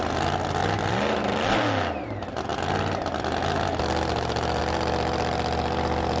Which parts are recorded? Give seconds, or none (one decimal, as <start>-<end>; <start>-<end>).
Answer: 0.0-0.6; 1.5-6.2